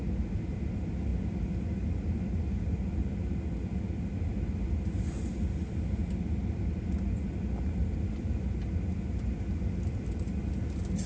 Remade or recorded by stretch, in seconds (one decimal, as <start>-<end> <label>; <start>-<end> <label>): 0.0-11.1 recorded